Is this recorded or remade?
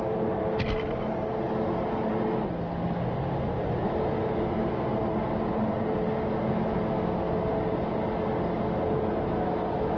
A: recorded